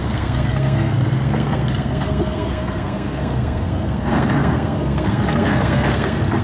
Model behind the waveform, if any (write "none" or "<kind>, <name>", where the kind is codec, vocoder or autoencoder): codec, SNAC